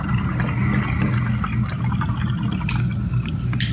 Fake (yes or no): no